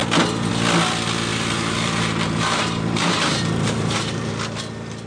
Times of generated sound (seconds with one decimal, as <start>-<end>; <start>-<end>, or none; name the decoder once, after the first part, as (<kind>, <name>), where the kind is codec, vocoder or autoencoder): 1.3-4.3 (vocoder, BigVGAN v2)